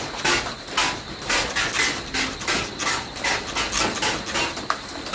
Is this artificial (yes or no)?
no